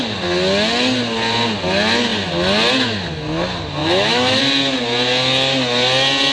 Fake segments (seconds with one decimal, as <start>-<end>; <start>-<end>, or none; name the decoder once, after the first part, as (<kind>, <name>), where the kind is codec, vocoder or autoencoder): 3.8-4.4 (autoencoder, DAC-VAE)